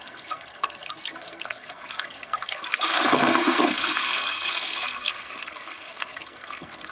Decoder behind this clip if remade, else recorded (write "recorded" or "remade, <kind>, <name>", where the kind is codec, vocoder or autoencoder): remade, codec, SNAC